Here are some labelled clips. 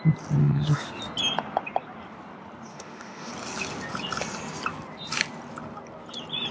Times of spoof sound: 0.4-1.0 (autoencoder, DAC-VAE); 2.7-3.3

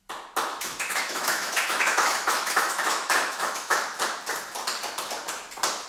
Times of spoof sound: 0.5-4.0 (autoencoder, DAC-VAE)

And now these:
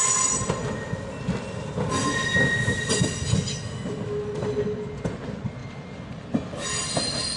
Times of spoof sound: none

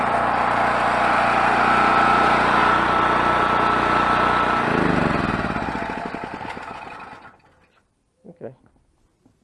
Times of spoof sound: none

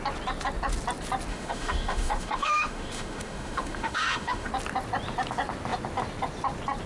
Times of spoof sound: 1.3-4.5 (autoencoder, DAC-VAE)

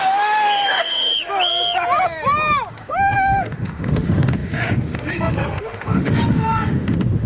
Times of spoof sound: 0.0-1.1 (autoencoder, DAC-VAE); 2.7-7.3

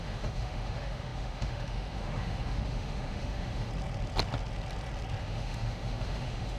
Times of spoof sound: 0.0-3.7 (autoencoder, DAC-VAE); 5.2-6.6

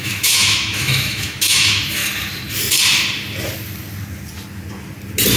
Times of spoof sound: 0.0-2.0 (autoencoder, DAC-VAE)